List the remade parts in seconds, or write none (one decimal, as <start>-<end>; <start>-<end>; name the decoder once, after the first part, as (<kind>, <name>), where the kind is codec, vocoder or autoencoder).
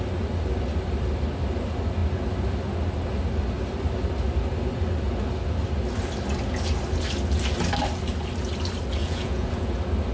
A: 9.0-9.7 (vocoder, Vocos)